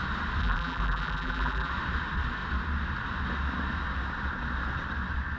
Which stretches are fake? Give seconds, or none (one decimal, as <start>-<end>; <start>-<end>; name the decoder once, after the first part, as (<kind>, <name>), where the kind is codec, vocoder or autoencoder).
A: 0.4-1.7 (vocoder, BigVGAN v2)